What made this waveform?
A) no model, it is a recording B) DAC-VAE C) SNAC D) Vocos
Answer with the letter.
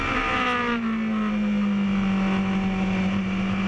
A